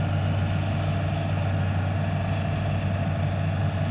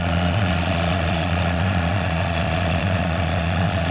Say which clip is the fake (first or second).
second